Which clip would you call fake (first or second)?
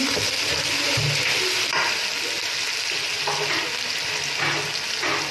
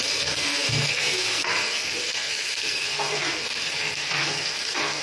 second